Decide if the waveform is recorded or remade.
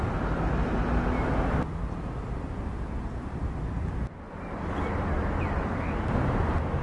recorded